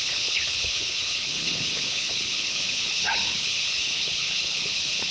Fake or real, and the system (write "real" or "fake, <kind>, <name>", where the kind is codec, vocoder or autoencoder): fake, codec, HILCodec